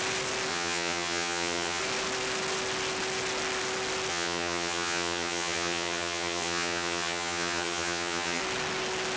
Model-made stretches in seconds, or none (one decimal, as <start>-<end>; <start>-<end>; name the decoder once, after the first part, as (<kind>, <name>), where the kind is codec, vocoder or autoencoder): 0.5-1.8 (vocoder, HiFi-GAN); 4.1-8.4